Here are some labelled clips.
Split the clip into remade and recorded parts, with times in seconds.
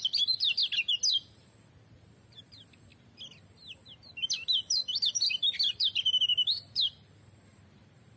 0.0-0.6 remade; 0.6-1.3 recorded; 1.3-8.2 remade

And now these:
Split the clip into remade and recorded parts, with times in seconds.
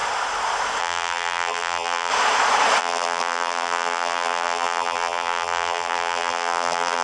0.0-0.8 recorded; 0.8-2.1 remade; 2.1-2.8 recorded; 2.8-7.0 remade